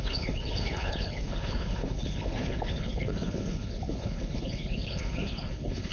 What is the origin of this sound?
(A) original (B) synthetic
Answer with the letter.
B